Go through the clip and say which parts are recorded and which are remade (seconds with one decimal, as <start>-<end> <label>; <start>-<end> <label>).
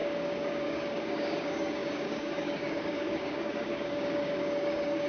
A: 0.0-5.1 remade